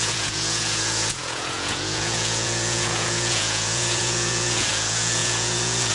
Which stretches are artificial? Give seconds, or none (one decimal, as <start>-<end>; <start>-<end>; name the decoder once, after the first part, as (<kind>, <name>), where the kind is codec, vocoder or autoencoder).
0.0-5.9 (vocoder, Vocos)